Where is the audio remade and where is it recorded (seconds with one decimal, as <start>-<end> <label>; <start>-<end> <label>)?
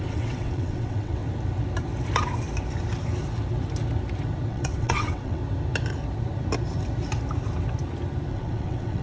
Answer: 0.0-1.2 remade; 1.2-4.5 recorded; 4.5-5.4 remade; 5.4-8.3 recorded; 8.3-9.0 remade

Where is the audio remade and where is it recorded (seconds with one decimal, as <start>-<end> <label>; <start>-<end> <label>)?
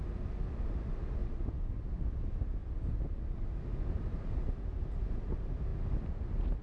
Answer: 0.0-6.6 recorded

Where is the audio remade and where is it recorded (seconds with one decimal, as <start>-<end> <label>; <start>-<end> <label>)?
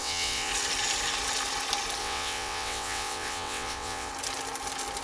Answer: 0.0-0.5 remade; 0.5-2.0 recorded; 2.0-4.1 remade; 4.1-5.0 recorded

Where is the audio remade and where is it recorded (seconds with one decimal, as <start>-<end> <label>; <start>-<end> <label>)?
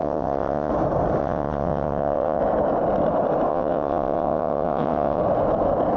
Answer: 0.0-0.7 remade; 0.7-1.2 recorded; 1.2-2.4 remade; 2.4-3.5 recorded; 3.5-5.2 remade; 5.2-6.0 recorded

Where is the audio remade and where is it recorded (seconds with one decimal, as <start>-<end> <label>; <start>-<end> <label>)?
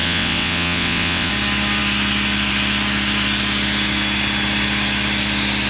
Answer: 0.0-1.3 remade; 1.3-5.7 recorded